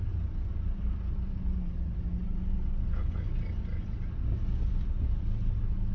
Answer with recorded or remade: recorded